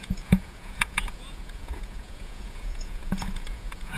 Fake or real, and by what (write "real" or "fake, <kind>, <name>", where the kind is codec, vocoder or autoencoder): fake, vocoder, Vocos